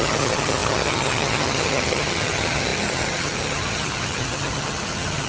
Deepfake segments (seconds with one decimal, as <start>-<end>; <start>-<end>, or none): 0.0-5.3